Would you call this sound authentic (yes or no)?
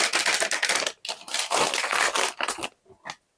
yes